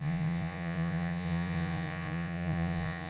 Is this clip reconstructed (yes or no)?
yes